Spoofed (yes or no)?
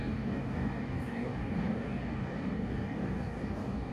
yes